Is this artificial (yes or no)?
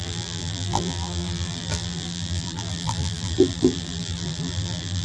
yes